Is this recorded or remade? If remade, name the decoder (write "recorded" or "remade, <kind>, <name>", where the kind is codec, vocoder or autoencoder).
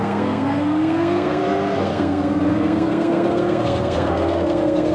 remade, codec, SNAC